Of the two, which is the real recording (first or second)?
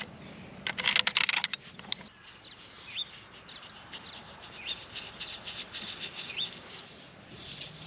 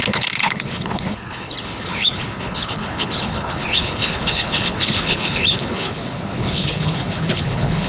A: first